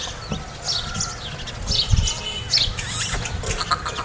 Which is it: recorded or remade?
recorded